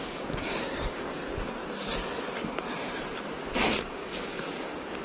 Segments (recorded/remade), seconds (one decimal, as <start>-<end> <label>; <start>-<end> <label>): 0.0-1.2 remade; 1.2-3.8 recorded; 3.8-5.0 remade